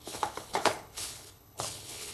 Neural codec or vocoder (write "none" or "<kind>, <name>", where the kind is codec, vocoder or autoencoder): codec, HILCodec